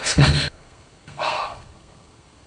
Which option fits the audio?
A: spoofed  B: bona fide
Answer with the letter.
A